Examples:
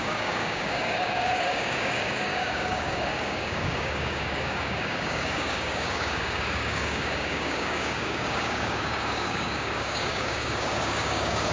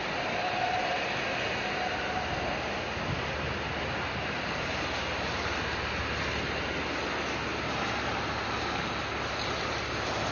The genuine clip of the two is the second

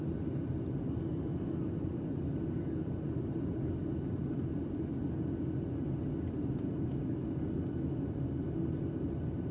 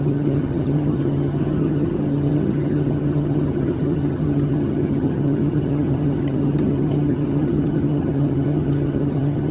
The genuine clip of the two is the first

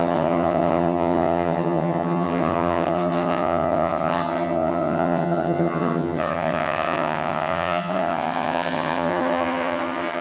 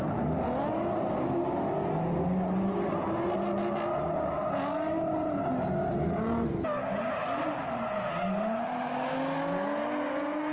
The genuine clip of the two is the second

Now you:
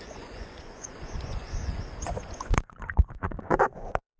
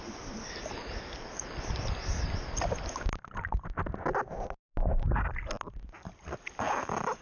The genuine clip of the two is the second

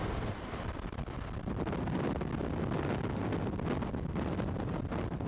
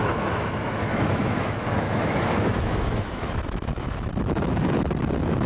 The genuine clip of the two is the first